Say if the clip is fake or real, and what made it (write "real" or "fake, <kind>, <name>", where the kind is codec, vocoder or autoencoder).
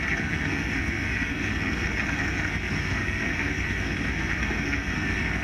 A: fake, codec, SNAC